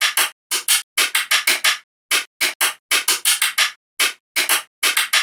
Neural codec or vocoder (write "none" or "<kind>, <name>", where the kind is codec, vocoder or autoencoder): none